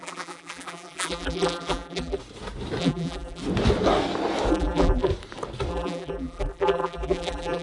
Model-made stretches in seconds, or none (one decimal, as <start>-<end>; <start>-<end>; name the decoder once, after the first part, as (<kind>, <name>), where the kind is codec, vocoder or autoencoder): 0.0-2.2 (vocoder, BigVGAN v2); 2.8-3.4; 4.5-5.1; 5.7-7.6